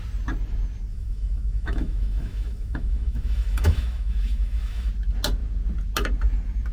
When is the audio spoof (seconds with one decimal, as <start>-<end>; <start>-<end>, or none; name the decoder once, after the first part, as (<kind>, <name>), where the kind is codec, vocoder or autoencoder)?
0.9-4.9 (autoencoder, DAC-VAE)